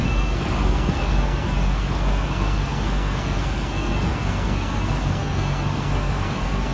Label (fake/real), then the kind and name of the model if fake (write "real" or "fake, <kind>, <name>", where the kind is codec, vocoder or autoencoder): fake, codec, SNAC